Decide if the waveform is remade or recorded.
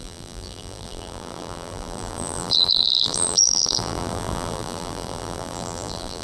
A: remade